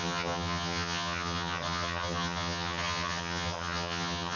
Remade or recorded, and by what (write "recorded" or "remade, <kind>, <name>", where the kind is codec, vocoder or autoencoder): remade, vocoder, HiFi-GAN